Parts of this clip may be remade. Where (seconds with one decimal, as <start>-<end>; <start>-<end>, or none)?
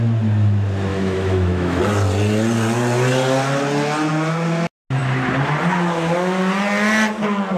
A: 0.9-1.8